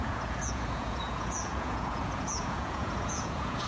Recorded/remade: remade